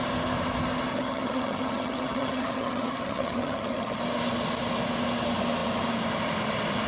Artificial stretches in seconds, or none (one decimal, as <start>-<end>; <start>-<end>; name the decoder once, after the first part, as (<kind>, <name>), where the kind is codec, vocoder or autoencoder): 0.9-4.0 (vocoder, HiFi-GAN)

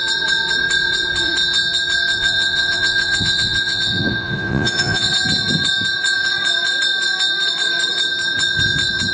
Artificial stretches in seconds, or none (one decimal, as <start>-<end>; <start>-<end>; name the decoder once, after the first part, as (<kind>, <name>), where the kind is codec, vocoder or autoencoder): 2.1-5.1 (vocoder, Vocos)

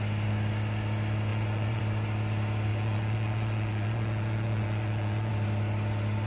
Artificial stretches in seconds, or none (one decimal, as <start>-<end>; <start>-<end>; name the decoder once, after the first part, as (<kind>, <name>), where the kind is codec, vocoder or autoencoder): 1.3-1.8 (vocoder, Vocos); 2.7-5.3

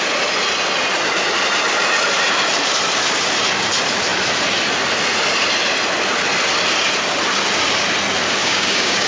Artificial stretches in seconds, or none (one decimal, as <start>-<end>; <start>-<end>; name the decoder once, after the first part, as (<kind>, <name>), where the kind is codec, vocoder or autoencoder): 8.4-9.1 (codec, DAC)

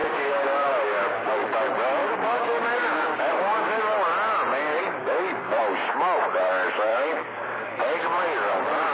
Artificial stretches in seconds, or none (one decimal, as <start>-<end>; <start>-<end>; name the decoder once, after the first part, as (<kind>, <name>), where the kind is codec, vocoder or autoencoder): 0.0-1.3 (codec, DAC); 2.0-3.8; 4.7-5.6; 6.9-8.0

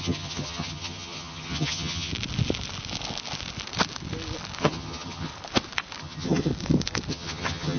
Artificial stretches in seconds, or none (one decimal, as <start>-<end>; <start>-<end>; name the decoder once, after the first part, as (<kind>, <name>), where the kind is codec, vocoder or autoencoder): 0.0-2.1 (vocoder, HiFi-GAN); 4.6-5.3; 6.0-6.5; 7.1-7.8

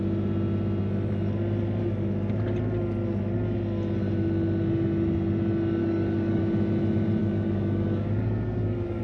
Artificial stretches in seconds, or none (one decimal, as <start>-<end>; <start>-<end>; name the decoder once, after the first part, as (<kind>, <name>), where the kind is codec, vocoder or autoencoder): 5.8-6.4 (codec, DAC); 7.2-9.0

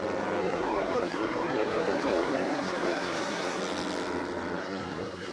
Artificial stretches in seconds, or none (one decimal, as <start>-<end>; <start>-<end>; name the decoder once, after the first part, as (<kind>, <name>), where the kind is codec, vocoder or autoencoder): 0.4-3.6 (codec, SNAC); 4.6-5.3